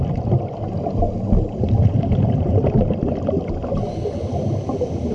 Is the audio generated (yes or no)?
no